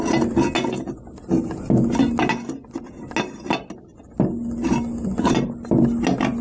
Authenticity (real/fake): real